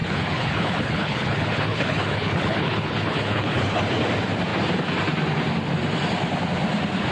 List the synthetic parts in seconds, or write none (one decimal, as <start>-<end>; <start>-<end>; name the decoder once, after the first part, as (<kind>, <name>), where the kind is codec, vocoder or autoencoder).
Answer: 0.0-3.9 (codec, HILCodec)